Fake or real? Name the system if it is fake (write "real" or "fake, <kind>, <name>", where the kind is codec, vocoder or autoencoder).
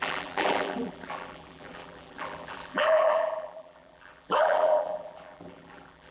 fake, vocoder, BigVGAN v2